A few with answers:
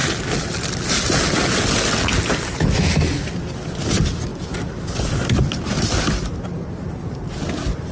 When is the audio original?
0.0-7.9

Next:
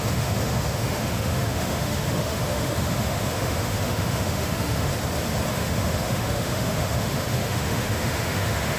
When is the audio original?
4.9-5.5

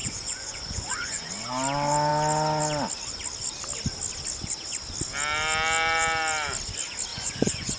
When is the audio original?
1.3-7.1

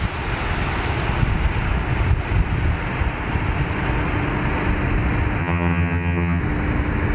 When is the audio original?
0.0-5.4; 6.4-7.1